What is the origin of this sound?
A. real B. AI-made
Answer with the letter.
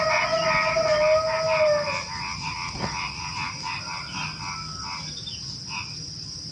A